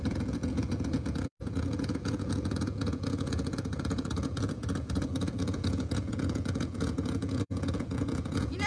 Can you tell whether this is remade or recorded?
remade